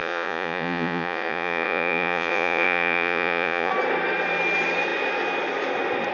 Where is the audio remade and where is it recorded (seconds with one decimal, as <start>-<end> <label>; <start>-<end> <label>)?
0.0-3.7 remade; 3.7-6.1 recorded